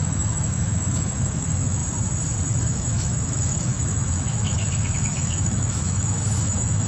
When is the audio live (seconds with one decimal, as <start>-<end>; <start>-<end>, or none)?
1.8-2.6